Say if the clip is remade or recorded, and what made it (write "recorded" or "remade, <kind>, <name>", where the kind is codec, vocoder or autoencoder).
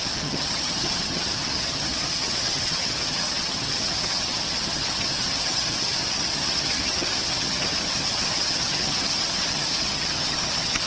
remade, vocoder, HiFi-GAN